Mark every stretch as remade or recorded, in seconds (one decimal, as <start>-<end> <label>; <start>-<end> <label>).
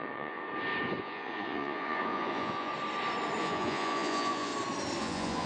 0.0-0.4 remade; 0.4-1.0 recorded; 1.0-2.7 remade; 2.7-3.4 recorded; 3.4-4.5 remade; 4.5-5.0 recorded; 5.0-5.5 remade